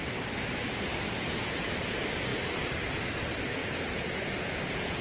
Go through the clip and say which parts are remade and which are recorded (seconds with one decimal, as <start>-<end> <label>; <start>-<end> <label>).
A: 0.0-3.6 recorded; 3.6-5.0 remade